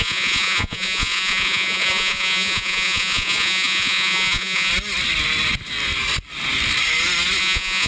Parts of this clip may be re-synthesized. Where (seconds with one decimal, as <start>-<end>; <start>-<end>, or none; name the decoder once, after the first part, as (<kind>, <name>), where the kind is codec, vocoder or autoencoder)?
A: 0.0-4.7 (vocoder, Vocos); 7.4-7.9